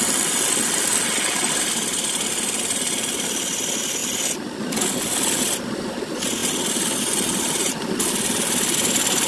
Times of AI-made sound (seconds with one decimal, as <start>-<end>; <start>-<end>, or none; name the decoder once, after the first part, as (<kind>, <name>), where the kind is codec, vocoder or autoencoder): 6.4-8.0 (vocoder, BigVGAN v2)